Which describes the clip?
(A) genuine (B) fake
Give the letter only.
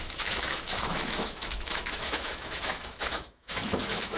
B